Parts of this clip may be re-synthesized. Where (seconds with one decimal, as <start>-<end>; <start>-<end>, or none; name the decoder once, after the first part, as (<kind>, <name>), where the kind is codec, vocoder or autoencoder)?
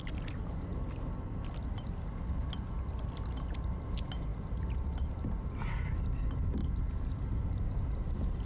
none